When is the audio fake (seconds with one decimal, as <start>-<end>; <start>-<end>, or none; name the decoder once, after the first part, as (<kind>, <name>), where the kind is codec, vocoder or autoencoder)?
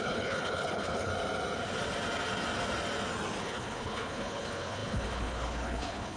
0.0-1.1 (codec, HILCodec); 3.4-6.2